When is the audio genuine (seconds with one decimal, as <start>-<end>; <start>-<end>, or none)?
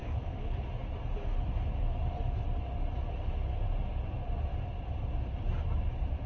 0.0-6.3